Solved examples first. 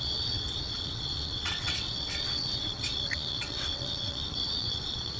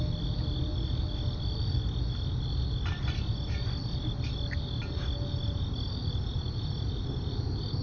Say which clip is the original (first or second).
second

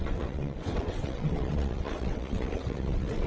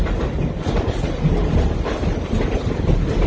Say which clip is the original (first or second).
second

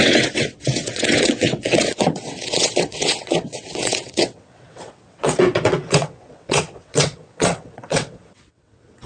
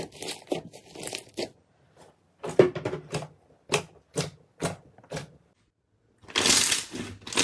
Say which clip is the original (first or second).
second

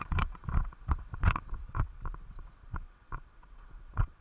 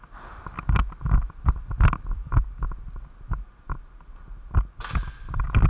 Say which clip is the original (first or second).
second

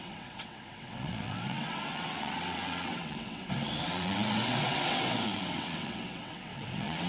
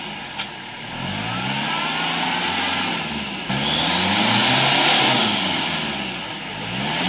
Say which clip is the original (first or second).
second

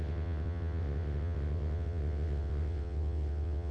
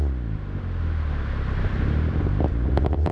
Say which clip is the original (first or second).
second